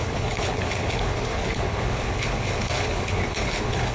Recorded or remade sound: remade